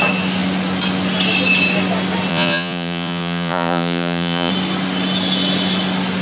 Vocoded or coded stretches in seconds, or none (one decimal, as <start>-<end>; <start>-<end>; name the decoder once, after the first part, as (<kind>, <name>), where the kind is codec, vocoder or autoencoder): 2.3-4.5 (vocoder, Vocos)